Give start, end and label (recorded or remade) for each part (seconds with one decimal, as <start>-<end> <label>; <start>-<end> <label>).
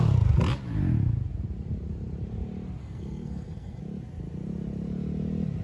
0.0-2.8 recorded; 2.8-3.8 remade; 3.8-5.6 recorded